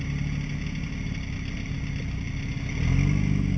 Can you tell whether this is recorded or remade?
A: recorded